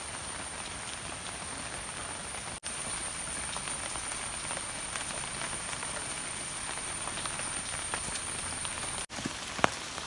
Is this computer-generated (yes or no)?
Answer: no